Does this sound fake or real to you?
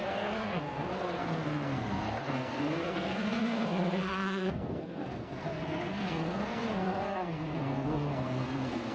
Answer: fake